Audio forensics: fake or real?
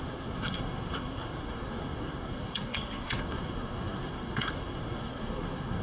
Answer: fake